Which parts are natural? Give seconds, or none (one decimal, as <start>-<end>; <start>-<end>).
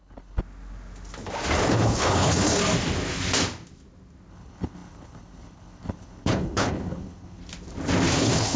0.4-1.7; 2.6-4.3; 7.4-8.1